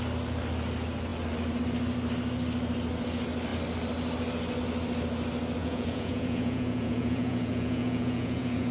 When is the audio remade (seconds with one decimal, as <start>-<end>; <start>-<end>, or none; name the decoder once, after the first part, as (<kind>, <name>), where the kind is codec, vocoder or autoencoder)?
5.6-8.7 (vocoder, Vocos)